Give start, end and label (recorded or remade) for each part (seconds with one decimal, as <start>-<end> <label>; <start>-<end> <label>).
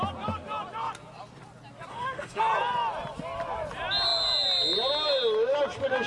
0.0-1.9 recorded; 1.9-2.4 remade; 2.4-6.1 recorded